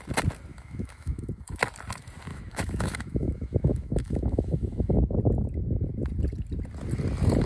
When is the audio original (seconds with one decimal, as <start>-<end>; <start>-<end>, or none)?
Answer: 0.0-0.5; 1.6-2.3; 5.2-7.5